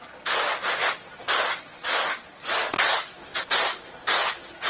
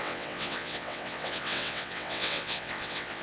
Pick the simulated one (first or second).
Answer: second